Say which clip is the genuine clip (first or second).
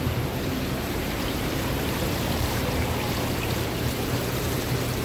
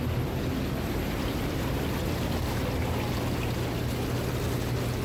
second